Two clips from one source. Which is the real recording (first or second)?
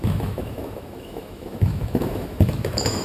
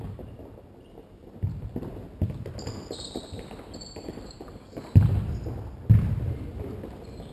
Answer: second